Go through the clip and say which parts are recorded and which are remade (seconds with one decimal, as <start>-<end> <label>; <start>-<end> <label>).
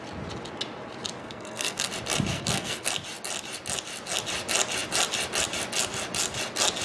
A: 0.0-1.2 recorded; 1.2-1.9 remade; 1.9-2.3 recorded; 2.3-2.9 remade; 2.9-6.8 recorded